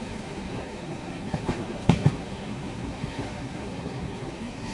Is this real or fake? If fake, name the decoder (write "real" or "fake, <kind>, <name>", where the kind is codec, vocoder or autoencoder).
fake, codec, SNAC